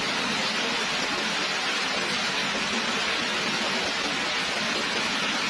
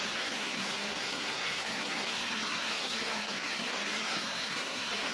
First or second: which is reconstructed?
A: second